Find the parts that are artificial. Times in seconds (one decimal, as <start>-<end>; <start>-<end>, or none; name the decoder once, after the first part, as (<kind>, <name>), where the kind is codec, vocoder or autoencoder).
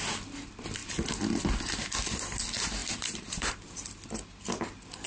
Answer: 2.8-3.5 (vocoder, BigVGAN v2)